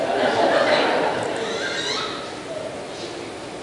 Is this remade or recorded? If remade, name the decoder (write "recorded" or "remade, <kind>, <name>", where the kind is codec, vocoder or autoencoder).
recorded